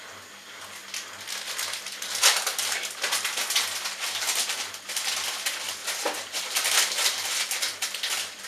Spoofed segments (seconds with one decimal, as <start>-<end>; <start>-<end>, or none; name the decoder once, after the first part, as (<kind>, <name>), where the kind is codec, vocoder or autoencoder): 5.8-6.4 (vocoder, BigVGAN v2)